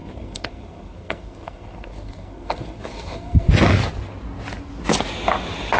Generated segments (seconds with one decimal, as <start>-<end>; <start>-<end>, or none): 0.0-3.5